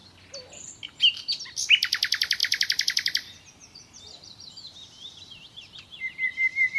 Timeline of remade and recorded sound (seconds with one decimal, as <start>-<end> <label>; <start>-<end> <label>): 0.0-2.4 recorded; 2.4-6.8 remade